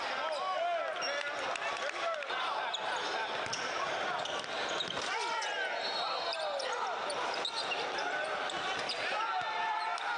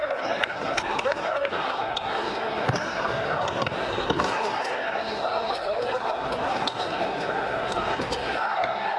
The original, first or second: first